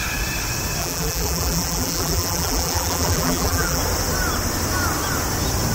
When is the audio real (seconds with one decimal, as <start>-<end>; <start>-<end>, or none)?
0.0-0.8; 3.8-5.7